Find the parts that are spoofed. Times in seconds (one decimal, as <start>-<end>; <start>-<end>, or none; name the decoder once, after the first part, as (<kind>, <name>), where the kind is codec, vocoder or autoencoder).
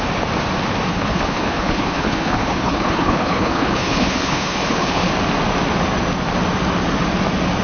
0.9-5.1 (codec, HILCodec)